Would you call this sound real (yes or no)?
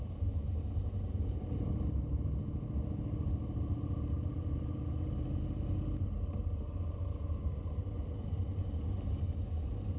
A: yes